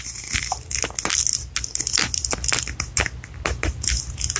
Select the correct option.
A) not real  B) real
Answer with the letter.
B